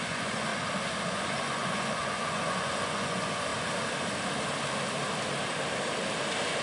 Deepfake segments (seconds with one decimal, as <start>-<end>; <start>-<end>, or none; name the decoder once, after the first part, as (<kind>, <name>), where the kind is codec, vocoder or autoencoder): 0.0-0.5 (vocoder, Vocos); 1.1-3.5